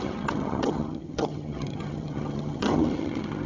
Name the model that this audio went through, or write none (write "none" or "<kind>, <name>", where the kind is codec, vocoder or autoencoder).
vocoder, HiFi-GAN